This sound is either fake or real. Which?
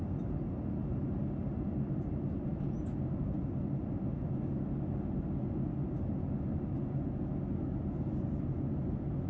real